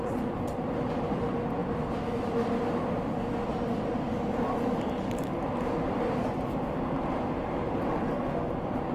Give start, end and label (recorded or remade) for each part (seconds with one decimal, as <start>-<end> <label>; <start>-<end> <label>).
0.0-8.9 recorded

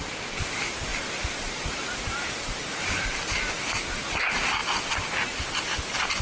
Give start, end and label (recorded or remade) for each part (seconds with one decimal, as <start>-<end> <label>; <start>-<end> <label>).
0.0-4.6 remade; 4.6-5.6 recorded; 5.6-6.2 remade